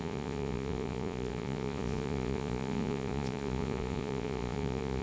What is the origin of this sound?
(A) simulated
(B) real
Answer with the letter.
A